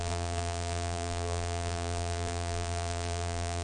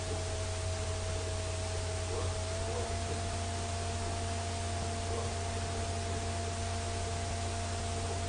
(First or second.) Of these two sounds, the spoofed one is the first